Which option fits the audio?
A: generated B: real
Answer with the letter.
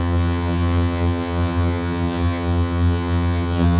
A